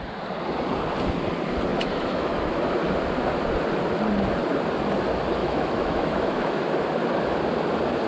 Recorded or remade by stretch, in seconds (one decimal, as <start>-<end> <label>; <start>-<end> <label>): 0.0-1.7 recorded; 1.7-2.6 remade; 2.6-5.4 recorded; 5.4-6.6 remade; 6.6-8.1 recorded